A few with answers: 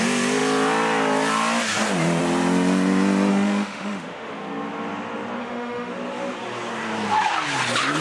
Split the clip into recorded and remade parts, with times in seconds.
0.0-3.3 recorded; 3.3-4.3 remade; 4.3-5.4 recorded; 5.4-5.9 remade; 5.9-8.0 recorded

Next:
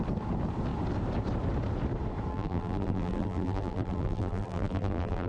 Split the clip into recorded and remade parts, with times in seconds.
0.0-2.3 recorded; 2.3-5.3 remade

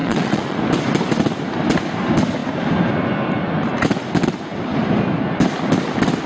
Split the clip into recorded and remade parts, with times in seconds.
0.0-0.6 remade; 0.6-6.3 recorded

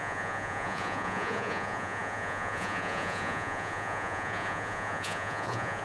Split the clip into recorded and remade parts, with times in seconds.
0.0-5.8 remade

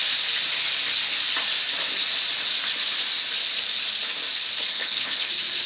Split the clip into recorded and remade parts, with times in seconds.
0.0-4.7 recorded; 4.7-5.3 remade; 5.3-5.7 recorded

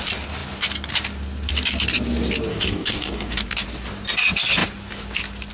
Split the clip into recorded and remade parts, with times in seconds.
0.0-2.5 recorded; 2.5-3.4 remade; 3.4-5.5 recorded

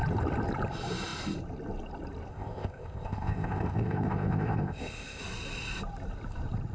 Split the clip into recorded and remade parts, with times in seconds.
0.0-2.3 recorded; 2.3-5.2 remade; 5.2-6.7 recorded

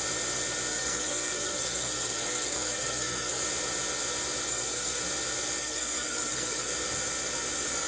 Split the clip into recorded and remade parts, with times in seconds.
0.0-0.7 recorded; 0.7-3.4 remade; 3.4-4.5 recorded; 4.5-5.0 remade; 5.0-5.6 recorded; 5.6-6.7 remade; 6.7-7.9 recorded